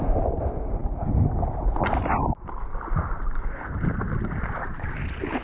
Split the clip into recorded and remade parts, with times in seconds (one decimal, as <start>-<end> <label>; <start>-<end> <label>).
0.0-5.4 recorded